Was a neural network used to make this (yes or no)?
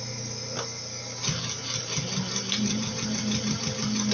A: no